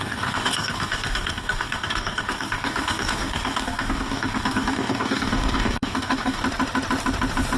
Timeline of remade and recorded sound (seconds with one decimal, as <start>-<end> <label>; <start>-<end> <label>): 0.0-6.4 remade; 6.4-7.6 recorded